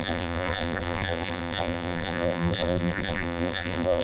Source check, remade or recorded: remade